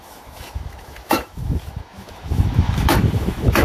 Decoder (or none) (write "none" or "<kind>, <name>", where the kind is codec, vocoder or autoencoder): autoencoder, DAC-VAE